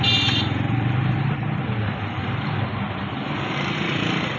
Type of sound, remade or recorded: remade